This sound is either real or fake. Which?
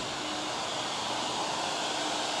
real